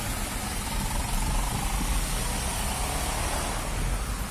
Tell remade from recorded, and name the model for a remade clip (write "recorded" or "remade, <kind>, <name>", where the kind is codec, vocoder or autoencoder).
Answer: recorded